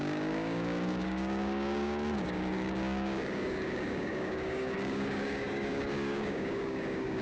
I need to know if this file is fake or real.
fake